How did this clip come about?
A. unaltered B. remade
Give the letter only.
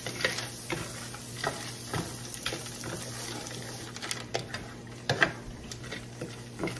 A